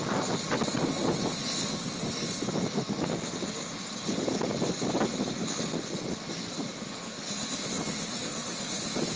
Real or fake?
real